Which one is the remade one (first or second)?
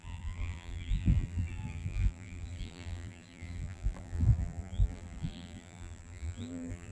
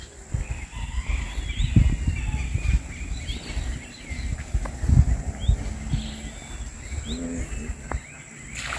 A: first